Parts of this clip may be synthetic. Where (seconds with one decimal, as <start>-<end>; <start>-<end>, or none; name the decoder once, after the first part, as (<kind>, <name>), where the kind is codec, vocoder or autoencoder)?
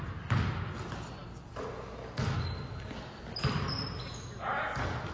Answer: none